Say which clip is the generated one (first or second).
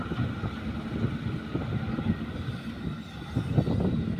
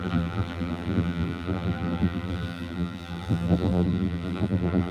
second